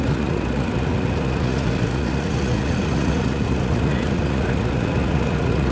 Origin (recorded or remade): remade